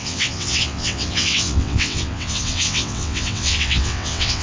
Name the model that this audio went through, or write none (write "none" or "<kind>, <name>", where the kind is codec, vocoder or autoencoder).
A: vocoder, WaveNeXt